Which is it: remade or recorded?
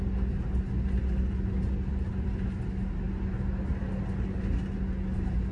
recorded